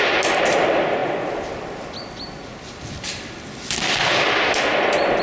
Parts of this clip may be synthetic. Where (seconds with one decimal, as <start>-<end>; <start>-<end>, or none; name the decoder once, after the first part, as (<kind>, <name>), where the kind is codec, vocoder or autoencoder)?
none